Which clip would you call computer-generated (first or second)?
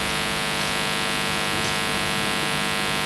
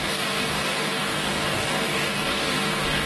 second